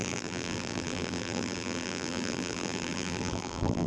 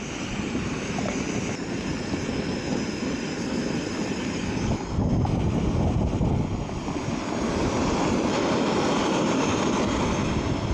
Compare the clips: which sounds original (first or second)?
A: second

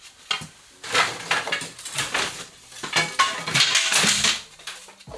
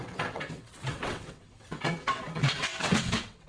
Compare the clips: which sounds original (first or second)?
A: first